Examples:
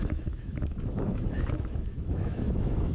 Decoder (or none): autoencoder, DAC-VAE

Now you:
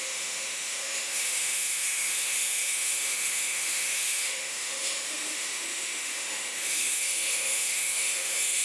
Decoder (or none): autoencoder, DAC-VAE